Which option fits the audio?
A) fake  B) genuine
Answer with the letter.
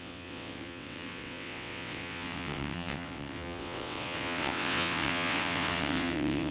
A